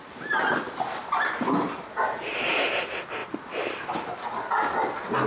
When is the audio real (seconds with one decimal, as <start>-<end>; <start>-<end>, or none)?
0.0-5.3